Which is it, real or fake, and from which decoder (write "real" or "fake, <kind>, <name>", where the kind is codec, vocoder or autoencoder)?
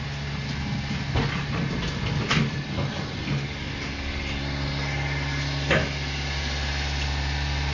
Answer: real